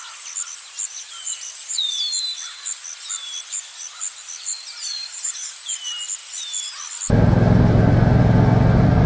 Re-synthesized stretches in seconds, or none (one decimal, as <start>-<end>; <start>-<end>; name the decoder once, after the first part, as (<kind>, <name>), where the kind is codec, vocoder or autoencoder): 0.9-2.0 (vocoder, Vocos); 4.8-5.7